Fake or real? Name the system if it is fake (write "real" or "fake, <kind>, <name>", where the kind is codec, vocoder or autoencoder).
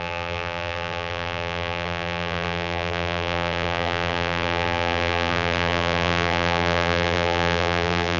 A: fake, vocoder, BigVGAN v2